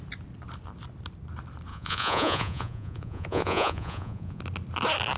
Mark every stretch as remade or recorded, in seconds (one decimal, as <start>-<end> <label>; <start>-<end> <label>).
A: 0.0-1.7 recorded; 1.7-4.4 remade; 4.4-5.2 recorded

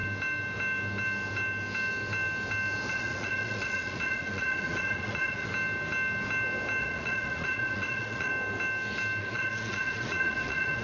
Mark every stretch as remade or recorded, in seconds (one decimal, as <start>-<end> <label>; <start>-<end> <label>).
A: 0.0-2.9 recorded; 2.9-5.5 remade; 5.5-6.8 recorded; 6.8-8.3 remade; 8.3-9.2 recorded; 9.2-10.8 remade

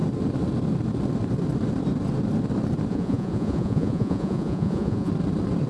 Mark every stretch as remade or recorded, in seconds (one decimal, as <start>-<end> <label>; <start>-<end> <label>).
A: 0.0-2.9 recorded; 2.9-5.1 remade; 5.1-5.7 recorded

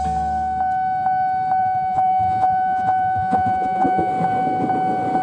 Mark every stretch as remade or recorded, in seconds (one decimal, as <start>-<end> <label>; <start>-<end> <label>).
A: 0.0-1.6 recorded; 1.6-4.1 remade; 4.1-5.2 recorded

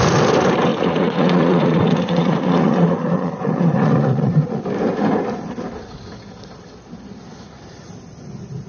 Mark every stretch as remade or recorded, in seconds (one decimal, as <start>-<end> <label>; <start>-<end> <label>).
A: 0.0-0.7 recorded; 0.7-4.6 remade; 4.6-8.7 recorded

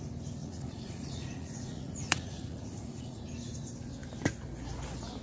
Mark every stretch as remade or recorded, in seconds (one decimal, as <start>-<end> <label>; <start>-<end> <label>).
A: 0.0-0.4 recorded; 0.4-3.2 remade; 3.2-5.2 recorded

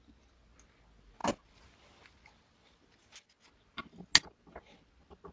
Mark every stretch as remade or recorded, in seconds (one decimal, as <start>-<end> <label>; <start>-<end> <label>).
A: 0.0-5.3 recorded

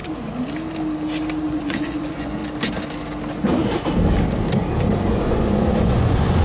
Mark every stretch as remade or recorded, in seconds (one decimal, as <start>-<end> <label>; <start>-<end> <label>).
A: 0.0-1.5 recorded; 1.5-2.4 remade; 2.4-5.1 recorded; 5.1-6.4 remade